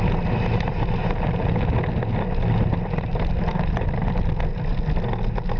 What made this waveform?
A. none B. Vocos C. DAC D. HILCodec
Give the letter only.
A